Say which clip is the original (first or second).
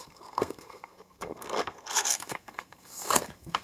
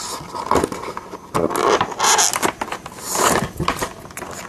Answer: second